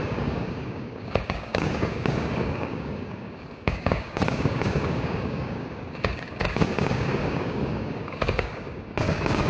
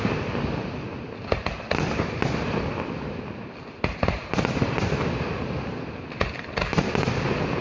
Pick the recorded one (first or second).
second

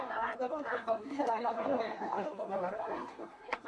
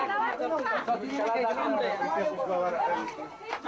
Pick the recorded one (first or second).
second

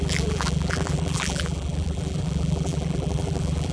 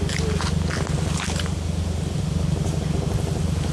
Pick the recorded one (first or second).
second